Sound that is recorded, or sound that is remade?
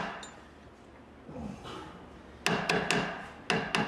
recorded